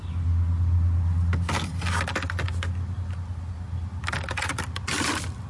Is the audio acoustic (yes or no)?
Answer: yes